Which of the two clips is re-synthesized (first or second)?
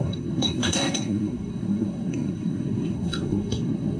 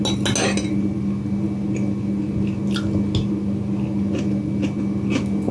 first